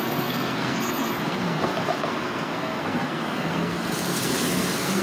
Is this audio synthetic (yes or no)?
yes